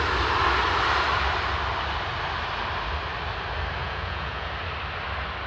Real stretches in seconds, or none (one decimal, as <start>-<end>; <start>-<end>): 0.0-3.8; 4.5-5.5